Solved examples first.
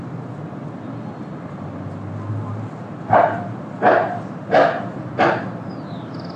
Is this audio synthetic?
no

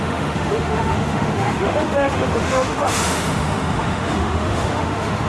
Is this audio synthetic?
yes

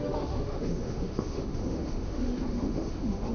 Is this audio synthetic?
yes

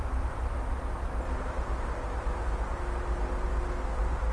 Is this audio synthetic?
no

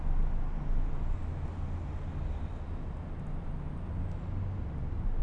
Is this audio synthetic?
no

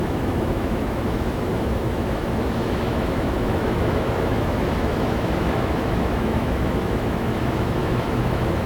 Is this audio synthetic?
yes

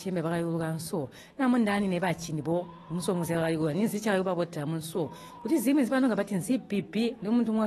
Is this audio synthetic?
yes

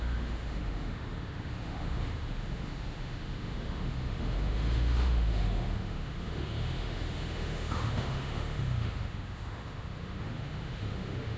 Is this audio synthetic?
yes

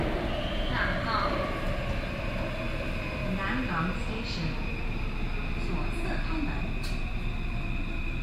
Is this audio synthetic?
no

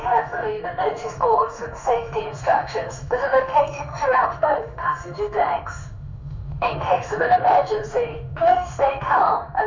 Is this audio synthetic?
yes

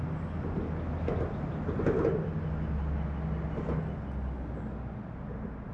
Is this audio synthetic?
no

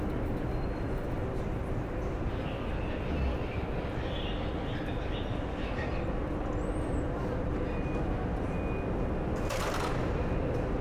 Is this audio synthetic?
no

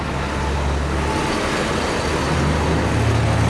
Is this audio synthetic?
no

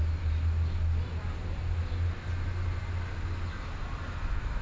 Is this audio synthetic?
no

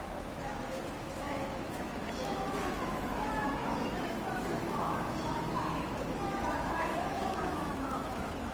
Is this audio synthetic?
yes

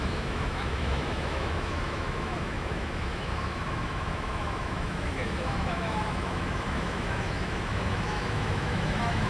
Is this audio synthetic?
yes